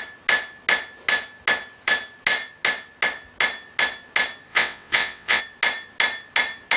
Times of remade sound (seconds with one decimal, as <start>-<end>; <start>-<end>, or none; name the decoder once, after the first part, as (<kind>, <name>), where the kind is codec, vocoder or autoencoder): 4.5-5.4 (vocoder, WaveNeXt)